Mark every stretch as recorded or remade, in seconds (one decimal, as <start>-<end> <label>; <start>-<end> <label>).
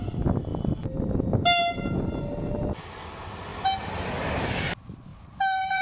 0.0-0.5 recorded; 0.5-1.8 remade; 1.8-3.5 recorded; 3.5-4.5 remade; 4.5-5.1 recorded; 5.1-5.8 remade